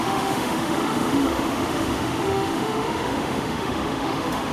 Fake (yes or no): yes